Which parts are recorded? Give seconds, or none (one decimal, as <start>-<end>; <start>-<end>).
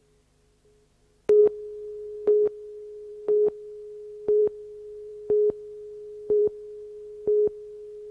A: 0.0-8.1